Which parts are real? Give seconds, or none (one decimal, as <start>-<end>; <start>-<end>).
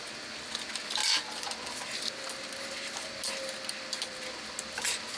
0.0-5.2